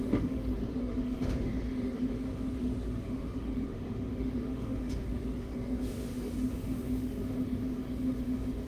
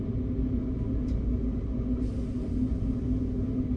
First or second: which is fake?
first